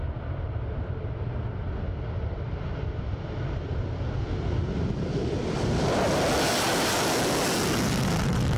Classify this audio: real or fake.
real